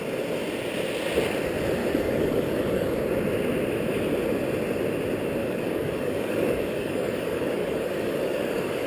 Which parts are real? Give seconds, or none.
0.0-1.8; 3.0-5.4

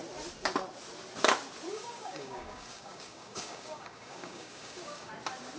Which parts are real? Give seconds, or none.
0.0-1.7; 5.1-5.6

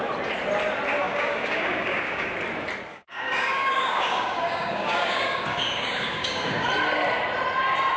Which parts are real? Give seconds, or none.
0.0-1.0; 2.3-2.9; 6.7-8.0